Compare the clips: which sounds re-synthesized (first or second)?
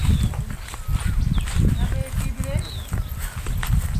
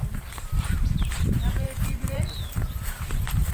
second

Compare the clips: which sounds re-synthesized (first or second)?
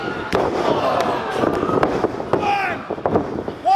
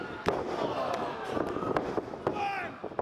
first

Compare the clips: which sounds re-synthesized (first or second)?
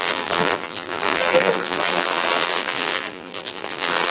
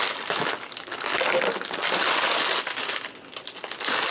first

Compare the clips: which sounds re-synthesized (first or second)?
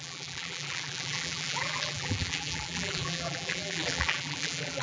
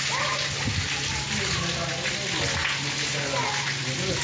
first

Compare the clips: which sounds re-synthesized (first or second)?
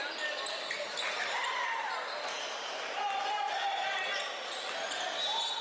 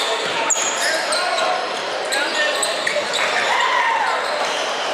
second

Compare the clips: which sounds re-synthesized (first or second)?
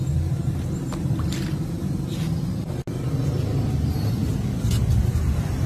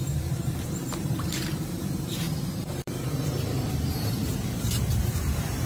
second